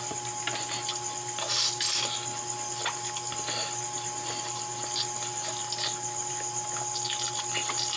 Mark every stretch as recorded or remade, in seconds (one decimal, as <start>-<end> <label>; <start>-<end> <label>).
0.0-8.0 recorded